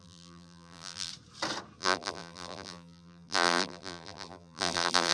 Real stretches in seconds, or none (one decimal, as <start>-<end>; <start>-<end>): 1.1-1.8